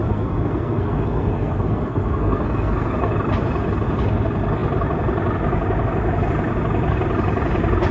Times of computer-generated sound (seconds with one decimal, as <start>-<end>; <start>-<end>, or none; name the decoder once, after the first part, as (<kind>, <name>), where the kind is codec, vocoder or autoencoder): 0.0-3.1 (codec, SNAC)

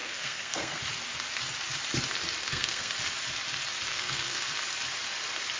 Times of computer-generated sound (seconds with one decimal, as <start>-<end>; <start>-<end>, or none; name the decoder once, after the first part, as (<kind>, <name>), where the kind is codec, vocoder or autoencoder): 0.0-0.8 (codec, SNAC); 2.4-2.9; 3.9-4.5

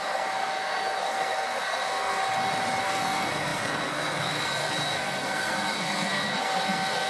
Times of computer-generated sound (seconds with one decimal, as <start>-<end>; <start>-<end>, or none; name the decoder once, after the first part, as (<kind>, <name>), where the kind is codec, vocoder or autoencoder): 0.0-2.2 (codec, SNAC); 2.8-7.1